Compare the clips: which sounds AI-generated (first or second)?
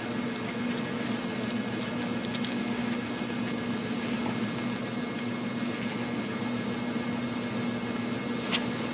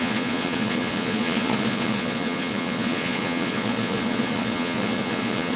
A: second